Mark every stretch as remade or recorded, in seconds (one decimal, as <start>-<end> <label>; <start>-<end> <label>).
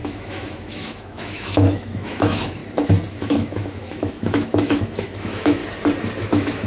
0.0-2.6 remade; 2.6-3.1 recorded; 3.1-5.6 remade; 5.6-6.2 recorded; 6.2-6.7 remade